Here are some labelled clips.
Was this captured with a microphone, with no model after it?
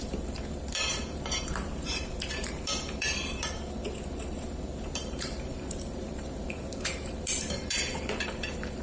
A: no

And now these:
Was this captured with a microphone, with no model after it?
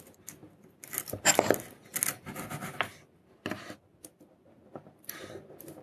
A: yes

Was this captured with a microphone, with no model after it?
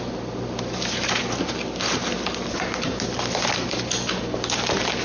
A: yes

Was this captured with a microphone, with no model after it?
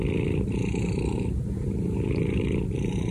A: no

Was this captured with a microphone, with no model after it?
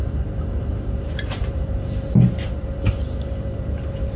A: no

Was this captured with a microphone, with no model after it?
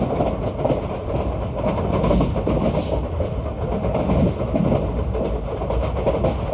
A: yes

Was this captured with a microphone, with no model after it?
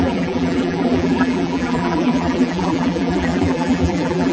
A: no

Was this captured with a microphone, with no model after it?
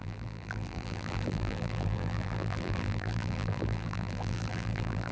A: no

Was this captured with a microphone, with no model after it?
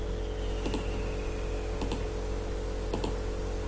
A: yes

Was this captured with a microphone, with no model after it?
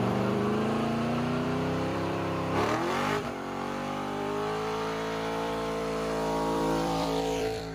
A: no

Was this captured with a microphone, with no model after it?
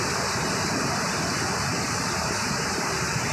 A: no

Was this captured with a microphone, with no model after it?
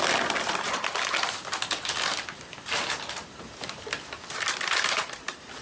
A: yes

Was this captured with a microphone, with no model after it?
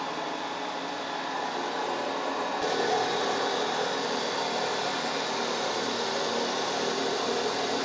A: yes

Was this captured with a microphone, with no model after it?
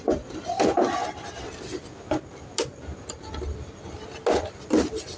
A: yes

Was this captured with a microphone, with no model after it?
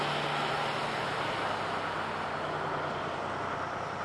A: yes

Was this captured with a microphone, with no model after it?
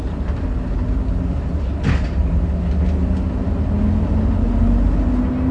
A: yes